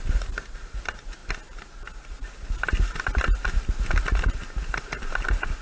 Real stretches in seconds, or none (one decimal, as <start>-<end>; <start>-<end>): 0.0-5.6